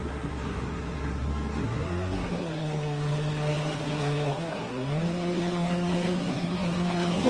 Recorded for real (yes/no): no